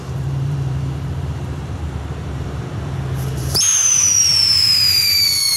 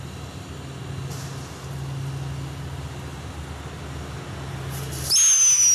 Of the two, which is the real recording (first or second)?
second